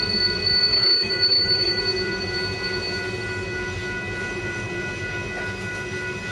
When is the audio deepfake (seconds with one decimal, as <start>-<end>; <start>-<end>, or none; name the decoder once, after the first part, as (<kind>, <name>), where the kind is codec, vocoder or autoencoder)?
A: 0.7-1.8 (autoencoder, DAC-VAE)